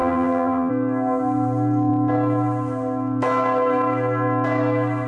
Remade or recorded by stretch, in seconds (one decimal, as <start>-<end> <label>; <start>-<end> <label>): 0.0-0.7 remade; 0.7-5.1 recorded